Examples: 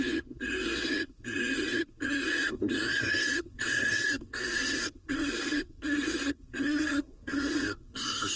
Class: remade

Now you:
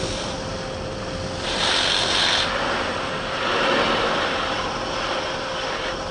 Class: recorded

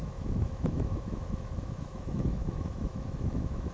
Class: remade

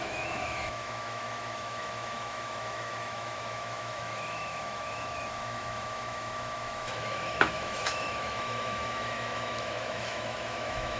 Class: remade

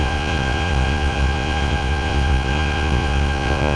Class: remade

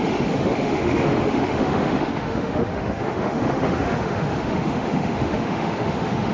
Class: remade